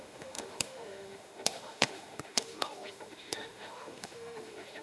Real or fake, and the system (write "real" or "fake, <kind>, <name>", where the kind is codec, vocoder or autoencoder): fake, autoencoder, DAC-VAE